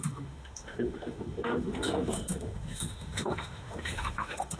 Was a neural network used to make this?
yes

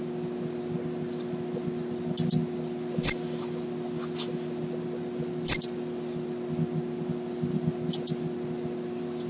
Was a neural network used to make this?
no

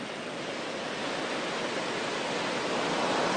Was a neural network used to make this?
no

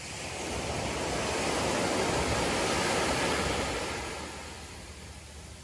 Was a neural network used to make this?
no